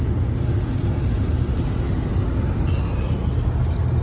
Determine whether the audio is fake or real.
real